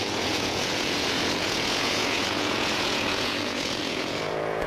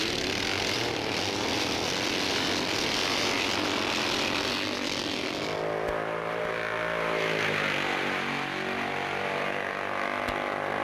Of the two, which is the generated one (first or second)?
first